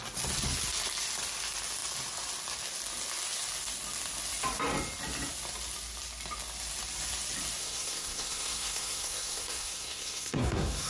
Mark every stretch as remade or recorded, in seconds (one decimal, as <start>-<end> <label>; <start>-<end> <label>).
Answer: 0.0-7.6 recorded; 7.6-10.9 remade